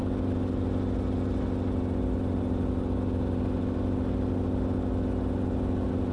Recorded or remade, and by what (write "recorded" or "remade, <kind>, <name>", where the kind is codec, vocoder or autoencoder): recorded